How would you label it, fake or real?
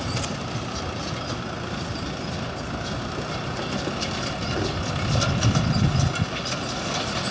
real